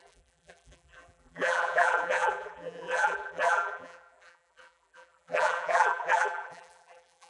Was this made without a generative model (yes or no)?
no